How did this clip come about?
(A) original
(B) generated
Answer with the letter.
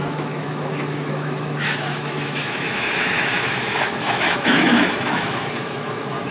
B